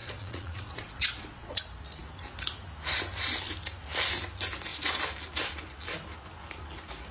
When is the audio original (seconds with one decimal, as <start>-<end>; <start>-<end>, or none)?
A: 1.6-7.1